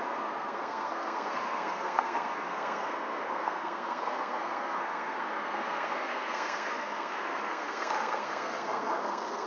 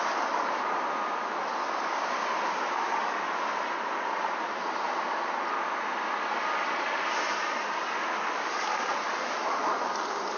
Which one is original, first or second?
second